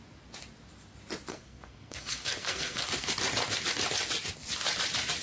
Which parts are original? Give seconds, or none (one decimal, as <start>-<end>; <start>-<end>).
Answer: 0.0-1.3; 3.1-5.2